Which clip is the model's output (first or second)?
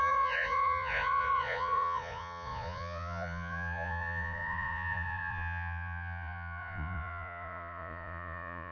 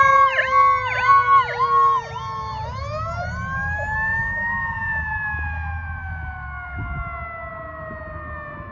first